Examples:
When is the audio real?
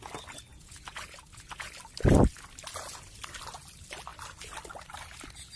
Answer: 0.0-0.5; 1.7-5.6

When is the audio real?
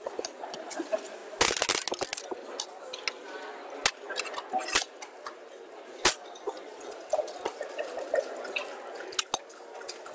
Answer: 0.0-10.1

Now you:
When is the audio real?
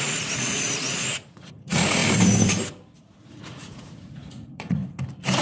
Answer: 2.0-3.0; 4.8-5.4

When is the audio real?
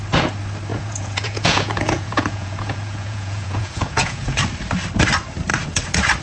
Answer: 0.0-0.7; 4.4-6.2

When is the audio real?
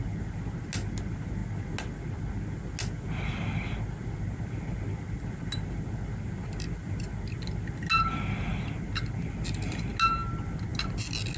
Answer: 0.0-11.4